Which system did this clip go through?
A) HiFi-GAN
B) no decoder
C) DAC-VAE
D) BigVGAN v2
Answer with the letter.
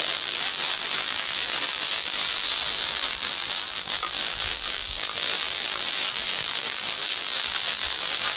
D